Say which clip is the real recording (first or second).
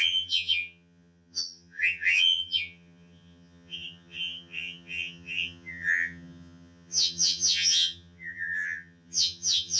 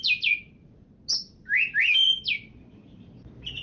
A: second